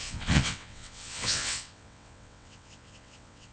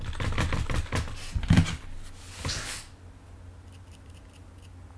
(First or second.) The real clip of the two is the second